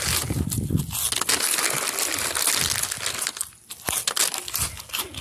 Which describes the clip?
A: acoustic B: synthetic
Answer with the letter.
A